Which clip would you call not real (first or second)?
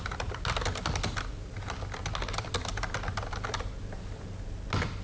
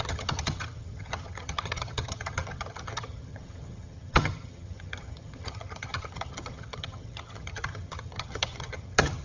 second